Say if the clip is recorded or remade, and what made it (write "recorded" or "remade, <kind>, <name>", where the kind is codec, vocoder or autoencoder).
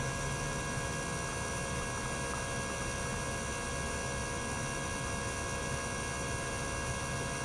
recorded